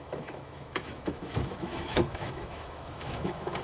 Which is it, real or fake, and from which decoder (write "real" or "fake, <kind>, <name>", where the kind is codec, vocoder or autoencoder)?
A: fake, autoencoder, DAC-VAE